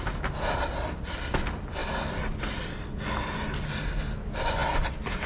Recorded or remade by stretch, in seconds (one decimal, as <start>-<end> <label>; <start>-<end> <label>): 0.0-5.3 recorded